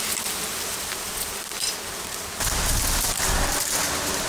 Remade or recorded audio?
recorded